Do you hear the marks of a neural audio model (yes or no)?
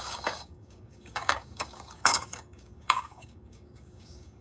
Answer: yes